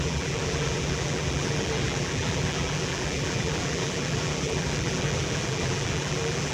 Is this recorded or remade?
remade